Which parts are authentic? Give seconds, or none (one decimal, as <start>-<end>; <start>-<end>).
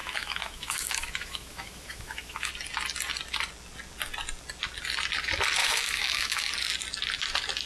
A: 2.5-5.6; 6.5-7.7